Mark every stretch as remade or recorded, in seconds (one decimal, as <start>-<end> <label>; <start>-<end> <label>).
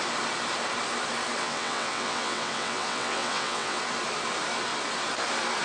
0.0-1.4 recorded; 1.4-3.8 remade; 3.8-5.6 recorded